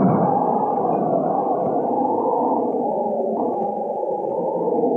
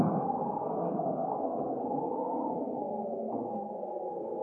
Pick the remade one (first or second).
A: second